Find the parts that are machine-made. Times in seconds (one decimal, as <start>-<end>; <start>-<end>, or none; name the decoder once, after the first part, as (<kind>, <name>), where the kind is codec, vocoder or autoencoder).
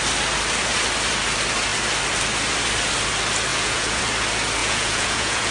3.5-4.0 (vocoder, Vocos); 4.6-5.5